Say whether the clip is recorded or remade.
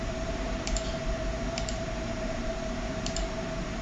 remade